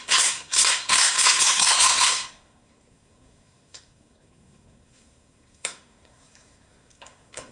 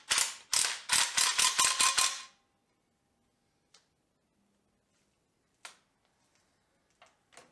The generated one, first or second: first